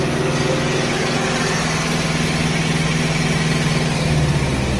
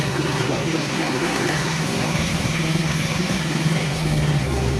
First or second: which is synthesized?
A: second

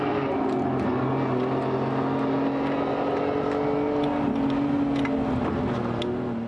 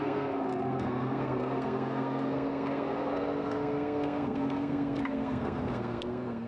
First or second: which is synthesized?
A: second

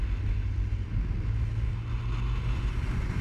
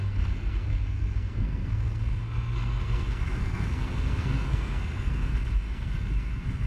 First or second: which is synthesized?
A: second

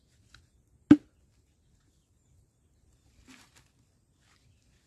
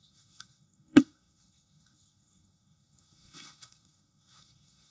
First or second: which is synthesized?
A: second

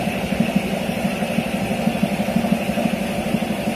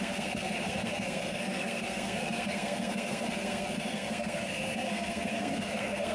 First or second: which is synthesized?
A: second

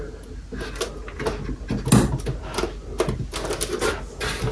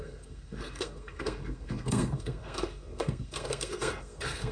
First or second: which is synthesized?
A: second